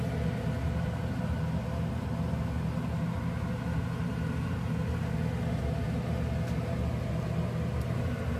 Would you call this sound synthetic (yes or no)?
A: no